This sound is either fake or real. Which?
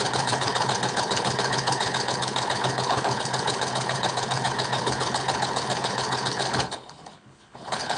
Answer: fake